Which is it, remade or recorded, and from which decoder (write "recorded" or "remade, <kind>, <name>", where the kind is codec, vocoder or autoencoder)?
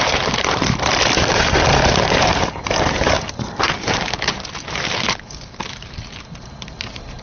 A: remade, vocoder, BigVGAN v2